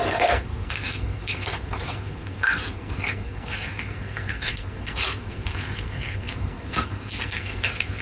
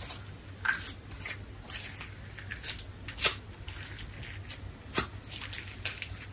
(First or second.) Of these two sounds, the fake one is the first